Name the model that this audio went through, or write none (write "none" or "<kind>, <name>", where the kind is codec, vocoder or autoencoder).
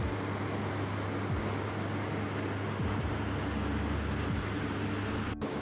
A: none